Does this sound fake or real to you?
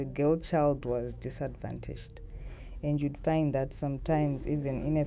fake